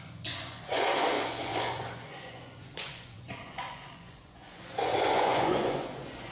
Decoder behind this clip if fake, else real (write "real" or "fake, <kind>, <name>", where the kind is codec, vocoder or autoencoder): fake, vocoder, Vocos